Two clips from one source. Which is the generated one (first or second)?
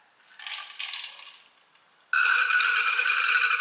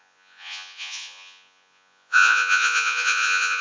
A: second